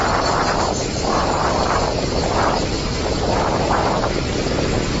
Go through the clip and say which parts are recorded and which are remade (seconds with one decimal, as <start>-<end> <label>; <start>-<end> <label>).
0.0-1.1 recorded; 1.1-4.1 remade; 4.1-5.0 recorded